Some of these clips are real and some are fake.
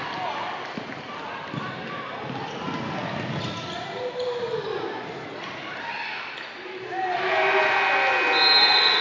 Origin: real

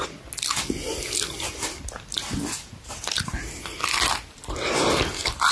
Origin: real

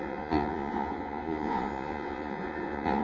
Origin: fake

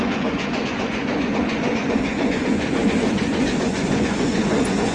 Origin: fake